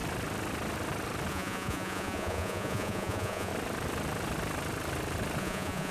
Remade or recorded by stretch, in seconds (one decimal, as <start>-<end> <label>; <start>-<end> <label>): 0.0-1.3 recorded; 1.3-3.5 remade; 3.5-5.4 recorded; 5.4-5.9 remade